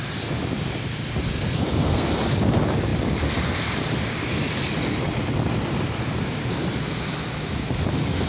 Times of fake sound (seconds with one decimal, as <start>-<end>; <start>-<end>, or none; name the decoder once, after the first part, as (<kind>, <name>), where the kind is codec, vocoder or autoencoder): 1.3-2.1 (codec, SNAC)